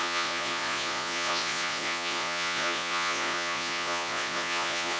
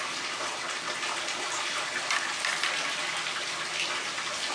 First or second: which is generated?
first